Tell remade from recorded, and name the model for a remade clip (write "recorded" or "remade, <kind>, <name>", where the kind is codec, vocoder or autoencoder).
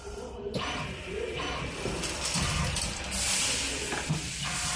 remade, vocoder, BigVGAN v2